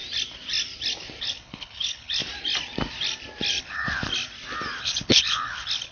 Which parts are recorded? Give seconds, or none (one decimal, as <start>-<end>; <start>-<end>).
0.0-1.2; 2.2-3.6; 4.1-4.8